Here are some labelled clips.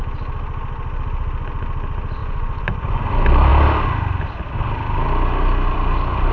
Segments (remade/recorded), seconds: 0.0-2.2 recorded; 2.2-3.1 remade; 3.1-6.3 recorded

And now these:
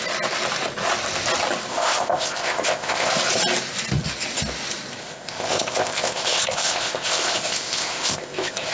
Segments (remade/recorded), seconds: 0.0-1.7 recorded; 1.7-3.1 remade; 3.1-5.0 recorded; 5.0-8.7 remade

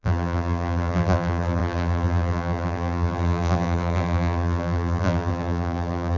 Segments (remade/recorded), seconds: 0.0-6.2 remade

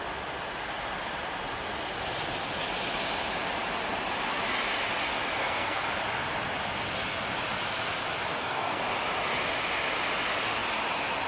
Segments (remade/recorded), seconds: 0.0-5.4 recorded; 5.4-5.9 remade; 5.9-8.3 recorded; 8.3-8.8 remade; 8.8-11.3 recorded

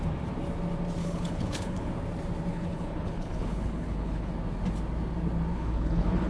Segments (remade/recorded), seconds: 0.0-1.0 recorded; 1.0-1.9 remade; 1.9-2.5 recorded; 2.5-4.3 remade; 4.3-5.5 recorded; 5.5-6.3 remade

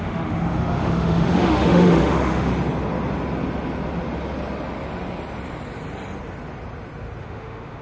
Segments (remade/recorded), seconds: 0.0-2.5 remade; 2.5-7.2 recorded; 7.2-7.8 remade